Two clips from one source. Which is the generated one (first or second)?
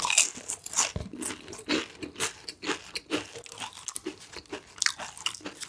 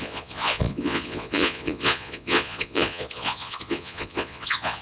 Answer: second